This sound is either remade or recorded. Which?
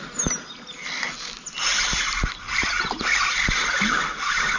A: recorded